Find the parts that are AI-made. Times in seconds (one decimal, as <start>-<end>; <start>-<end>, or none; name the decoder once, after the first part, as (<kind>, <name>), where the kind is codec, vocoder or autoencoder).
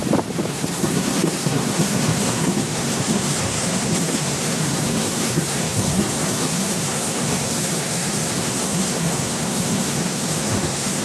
0.5-11.0 (codec, SNAC)